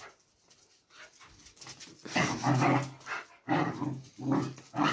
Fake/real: real